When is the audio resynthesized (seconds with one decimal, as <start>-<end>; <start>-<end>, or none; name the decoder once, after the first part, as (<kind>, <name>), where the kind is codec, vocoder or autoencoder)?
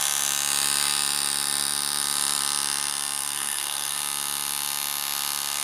3.2-4.0 (codec, SNAC)